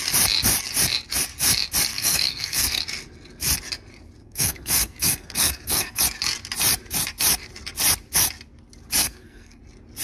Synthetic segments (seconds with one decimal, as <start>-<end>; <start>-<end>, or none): 1.9-2.8; 4.2-6.0; 9.0-9.6